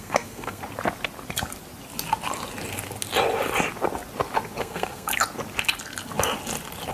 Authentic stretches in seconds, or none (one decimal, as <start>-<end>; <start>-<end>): 0.6-4.6; 5.1-6.9